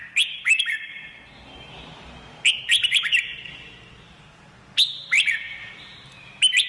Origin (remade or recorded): recorded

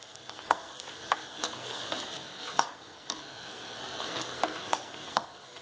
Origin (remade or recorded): remade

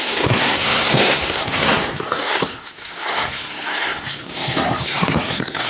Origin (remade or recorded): remade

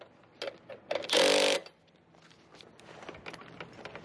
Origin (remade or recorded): recorded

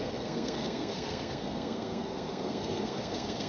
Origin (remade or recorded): remade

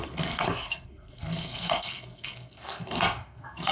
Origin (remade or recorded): remade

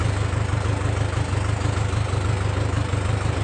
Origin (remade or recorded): recorded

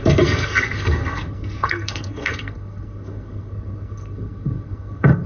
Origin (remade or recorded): remade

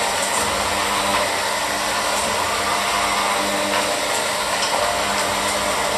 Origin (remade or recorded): recorded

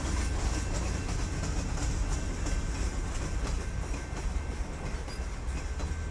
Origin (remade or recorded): recorded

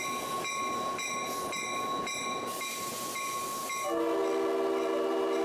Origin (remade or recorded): recorded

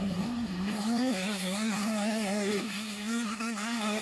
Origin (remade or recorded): remade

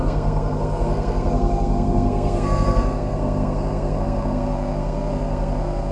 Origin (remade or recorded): remade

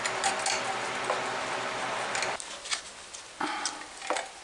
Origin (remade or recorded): recorded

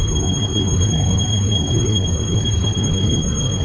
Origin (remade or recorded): remade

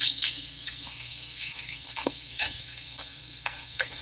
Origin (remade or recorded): remade